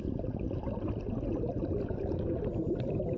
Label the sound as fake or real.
real